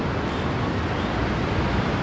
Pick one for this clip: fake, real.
real